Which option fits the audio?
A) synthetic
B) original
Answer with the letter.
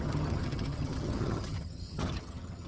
A